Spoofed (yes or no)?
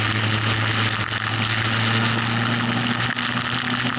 no